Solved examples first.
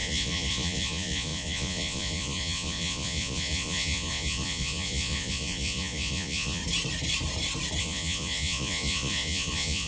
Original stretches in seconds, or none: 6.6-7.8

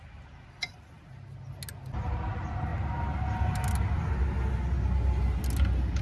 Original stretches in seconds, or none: 0.0-6.0

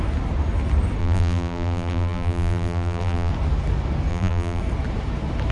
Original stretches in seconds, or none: 0.0-1.0; 3.3-4.1; 4.6-5.5

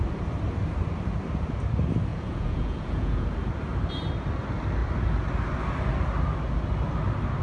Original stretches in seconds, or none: 0.0-2.1; 3.3-7.4

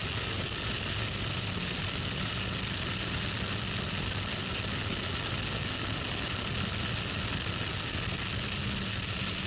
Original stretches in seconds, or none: 0.0-9.5

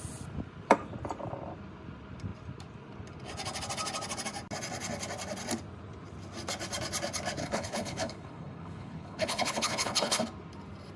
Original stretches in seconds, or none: 0.0-7.4; 10.2-11.0

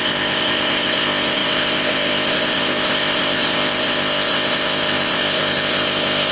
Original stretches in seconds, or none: none

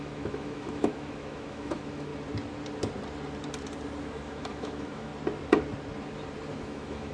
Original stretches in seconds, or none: 2.1-4.0; 5.1-6.5